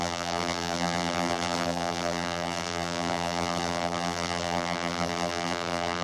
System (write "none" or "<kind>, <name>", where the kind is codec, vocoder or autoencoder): vocoder, BigVGAN v2